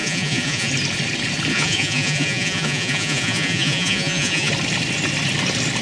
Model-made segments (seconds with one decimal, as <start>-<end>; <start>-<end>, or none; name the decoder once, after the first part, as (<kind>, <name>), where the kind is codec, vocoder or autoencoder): 0.0-0.7 (vocoder, Vocos); 1.5-4.5